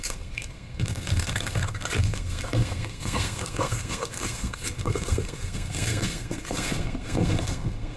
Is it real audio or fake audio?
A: fake